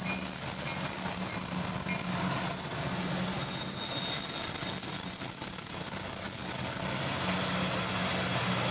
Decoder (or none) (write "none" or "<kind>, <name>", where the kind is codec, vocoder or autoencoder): none